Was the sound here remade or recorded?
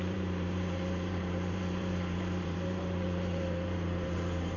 remade